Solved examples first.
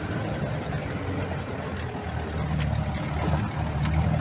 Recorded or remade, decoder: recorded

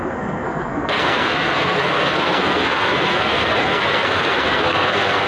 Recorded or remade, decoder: remade, codec, SNAC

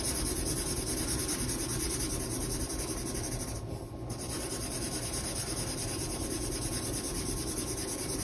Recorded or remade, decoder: remade, vocoder, BigVGAN v2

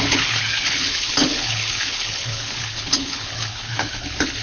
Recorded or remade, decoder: remade, codec, HILCodec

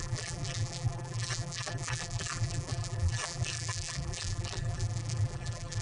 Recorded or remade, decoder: remade, vocoder, BigVGAN v2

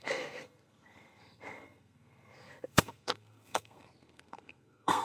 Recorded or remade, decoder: remade, codec, SNAC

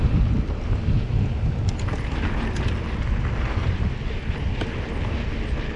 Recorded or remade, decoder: recorded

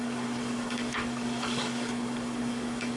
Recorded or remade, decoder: remade, codec, DAC